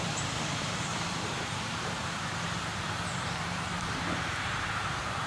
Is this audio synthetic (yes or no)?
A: yes